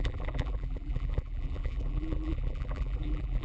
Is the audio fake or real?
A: fake